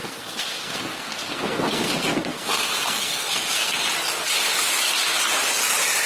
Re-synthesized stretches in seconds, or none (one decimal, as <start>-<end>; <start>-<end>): 0.0-3.7